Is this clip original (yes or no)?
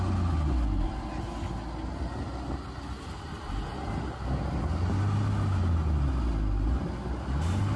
yes